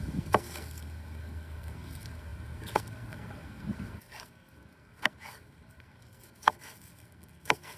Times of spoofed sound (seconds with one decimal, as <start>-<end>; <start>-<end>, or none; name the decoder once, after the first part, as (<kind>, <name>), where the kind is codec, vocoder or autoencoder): 0.0-7.8 (codec, SNAC)

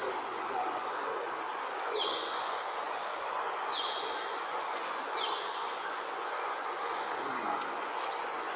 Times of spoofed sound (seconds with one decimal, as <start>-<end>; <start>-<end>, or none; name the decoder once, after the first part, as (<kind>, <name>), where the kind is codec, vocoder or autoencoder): 0.0-8.6 (vocoder, Vocos)

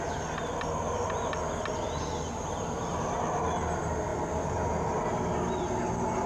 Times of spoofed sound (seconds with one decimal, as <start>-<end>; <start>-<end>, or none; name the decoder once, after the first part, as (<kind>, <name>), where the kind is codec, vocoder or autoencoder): none

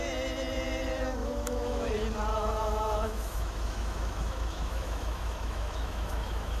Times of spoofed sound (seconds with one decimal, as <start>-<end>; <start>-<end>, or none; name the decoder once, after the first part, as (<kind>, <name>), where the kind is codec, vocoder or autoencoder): 1.2-1.9 (autoencoder, DAC-VAE); 2.3-6.6

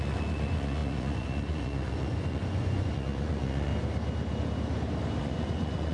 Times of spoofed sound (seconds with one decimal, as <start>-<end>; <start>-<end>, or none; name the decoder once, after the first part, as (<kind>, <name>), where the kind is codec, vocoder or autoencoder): 0.0-3.7 (vocoder, Vocos); 5.2-5.9

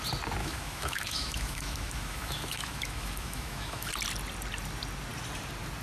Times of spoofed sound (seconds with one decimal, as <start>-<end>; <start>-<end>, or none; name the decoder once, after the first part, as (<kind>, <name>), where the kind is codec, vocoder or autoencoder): 0.4-3.9 (autoencoder, DAC-VAE)

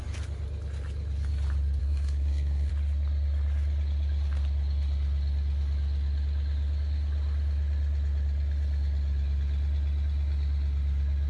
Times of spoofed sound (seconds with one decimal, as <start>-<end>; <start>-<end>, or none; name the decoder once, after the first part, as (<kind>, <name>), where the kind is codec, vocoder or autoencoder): 1.8-2.7 (codec, SNAC)